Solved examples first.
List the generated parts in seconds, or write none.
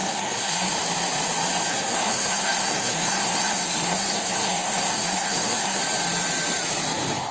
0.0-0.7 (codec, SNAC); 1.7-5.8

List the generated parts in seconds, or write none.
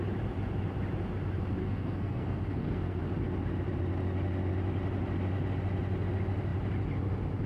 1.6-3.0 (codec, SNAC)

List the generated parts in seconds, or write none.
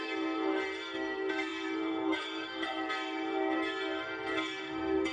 0.0-5.1 (codec, SNAC)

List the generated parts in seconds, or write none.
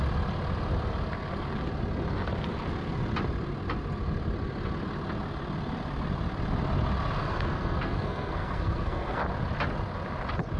7.2-9.2 (codec, SNAC)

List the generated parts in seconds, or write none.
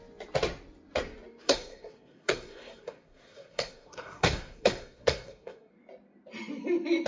1.4-5.7 (codec, SNAC)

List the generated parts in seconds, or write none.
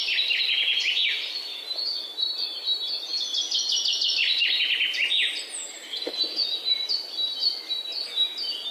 none